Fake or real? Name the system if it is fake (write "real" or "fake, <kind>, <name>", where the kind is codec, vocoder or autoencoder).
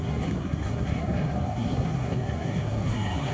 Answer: fake, codec, SNAC